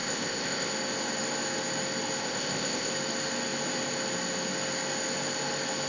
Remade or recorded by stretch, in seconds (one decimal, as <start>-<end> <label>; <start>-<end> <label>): 0.0-0.7 remade; 0.7-2.2 recorded; 2.2-2.9 remade; 2.9-5.9 recorded

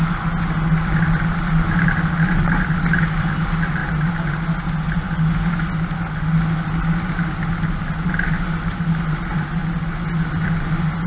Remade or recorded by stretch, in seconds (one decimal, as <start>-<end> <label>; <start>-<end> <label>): 0.0-11.1 recorded